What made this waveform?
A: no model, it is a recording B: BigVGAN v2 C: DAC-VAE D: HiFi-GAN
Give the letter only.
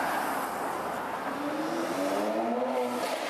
A